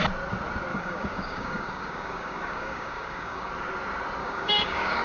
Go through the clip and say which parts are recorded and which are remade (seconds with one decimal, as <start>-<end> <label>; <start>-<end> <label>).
0.0-0.7 recorded; 0.7-3.5 remade; 3.5-4.2 recorded; 4.2-5.0 remade